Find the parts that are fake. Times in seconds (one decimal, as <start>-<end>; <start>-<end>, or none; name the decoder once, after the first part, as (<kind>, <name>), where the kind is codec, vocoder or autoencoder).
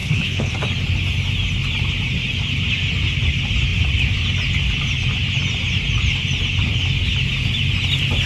0.0-0.5 (codec, HILCodec)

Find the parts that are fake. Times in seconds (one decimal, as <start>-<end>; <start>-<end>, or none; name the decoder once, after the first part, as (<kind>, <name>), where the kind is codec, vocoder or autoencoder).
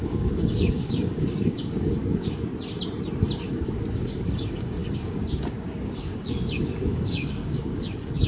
0.0-2.5 (codec, DAC); 3.4-8.3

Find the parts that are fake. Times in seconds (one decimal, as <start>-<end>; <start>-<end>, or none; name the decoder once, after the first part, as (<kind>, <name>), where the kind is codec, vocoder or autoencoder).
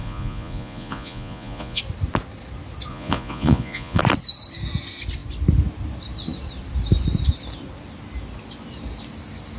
0.0-1.8 (vocoder, Vocos); 2.9-4.0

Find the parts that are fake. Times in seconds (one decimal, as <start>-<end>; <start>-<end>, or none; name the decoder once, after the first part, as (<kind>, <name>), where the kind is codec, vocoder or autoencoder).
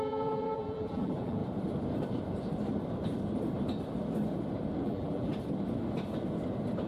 0.0-1.4 (vocoder, BigVGAN v2); 4.8-5.3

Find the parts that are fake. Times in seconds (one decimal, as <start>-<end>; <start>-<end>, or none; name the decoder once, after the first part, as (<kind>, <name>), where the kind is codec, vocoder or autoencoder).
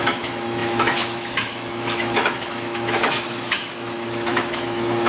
0.0-5.1 (autoencoder, DAC-VAE)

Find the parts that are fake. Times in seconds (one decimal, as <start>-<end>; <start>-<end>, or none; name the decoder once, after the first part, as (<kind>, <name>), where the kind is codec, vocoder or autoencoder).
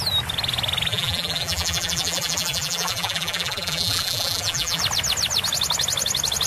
0.9-4.8 (vocoder, BigVGAN v2)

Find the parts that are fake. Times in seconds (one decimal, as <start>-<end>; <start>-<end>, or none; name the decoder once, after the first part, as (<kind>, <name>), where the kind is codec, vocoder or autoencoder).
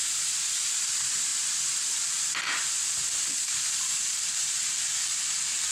0.0-5.7 (vocoder, BigVGAN v2)